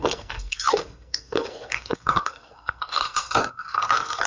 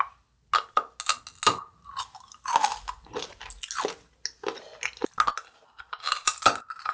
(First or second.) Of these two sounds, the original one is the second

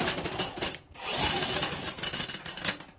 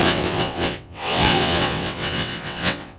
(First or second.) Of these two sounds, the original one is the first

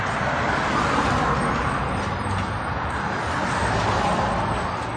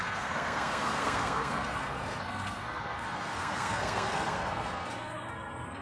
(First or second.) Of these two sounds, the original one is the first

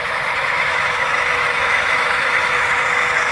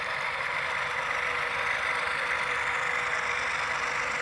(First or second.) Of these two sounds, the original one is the second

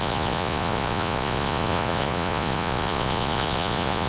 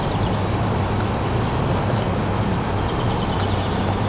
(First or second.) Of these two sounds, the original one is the second